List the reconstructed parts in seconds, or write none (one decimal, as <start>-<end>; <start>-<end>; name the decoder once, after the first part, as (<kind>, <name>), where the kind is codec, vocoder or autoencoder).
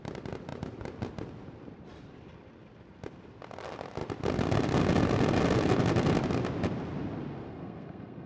7.4-8.3 (codec, SNAC)